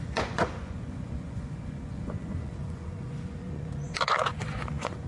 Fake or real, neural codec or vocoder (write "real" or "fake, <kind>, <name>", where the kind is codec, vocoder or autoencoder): fake, vocoder, Vocos